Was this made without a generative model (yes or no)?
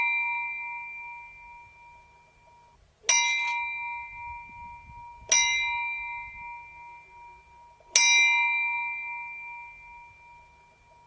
yes